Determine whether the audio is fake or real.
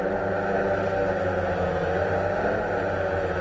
real